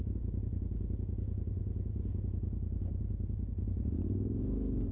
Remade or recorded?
recorded